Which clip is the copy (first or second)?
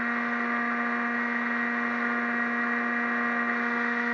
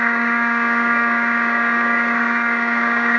second